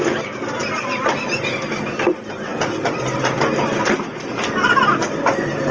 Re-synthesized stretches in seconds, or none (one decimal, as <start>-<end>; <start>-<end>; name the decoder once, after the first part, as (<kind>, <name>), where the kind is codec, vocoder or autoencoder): none